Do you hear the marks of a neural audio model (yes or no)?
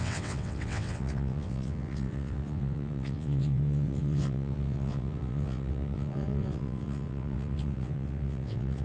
yes